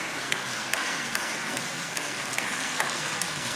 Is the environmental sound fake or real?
fake